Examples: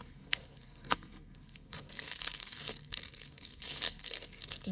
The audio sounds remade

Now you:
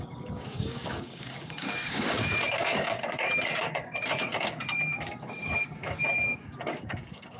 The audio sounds remade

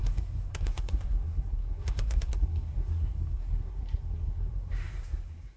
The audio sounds remade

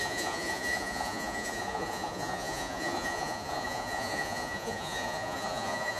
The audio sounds remade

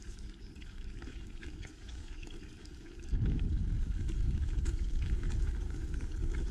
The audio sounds remade